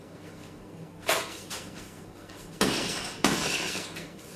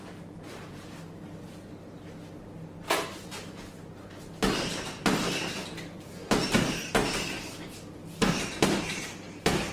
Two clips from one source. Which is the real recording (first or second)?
second